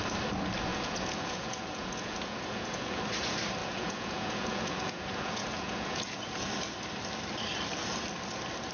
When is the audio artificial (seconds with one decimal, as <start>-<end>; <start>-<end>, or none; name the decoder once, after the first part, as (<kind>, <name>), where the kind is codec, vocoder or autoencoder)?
0.7-3.0 (vocoder, Vocos); 3.6-6.5